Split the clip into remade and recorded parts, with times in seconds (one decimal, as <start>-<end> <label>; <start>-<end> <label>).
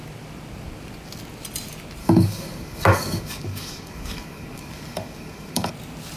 0.0-2.0 recorded; 2.0-5.7 remade; 5.7-6.2 recorded